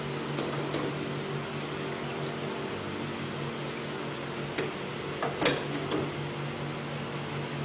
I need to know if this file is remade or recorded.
recorded